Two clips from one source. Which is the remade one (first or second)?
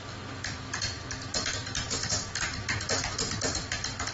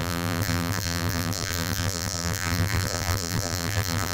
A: second